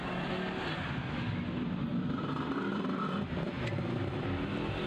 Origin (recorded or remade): recorded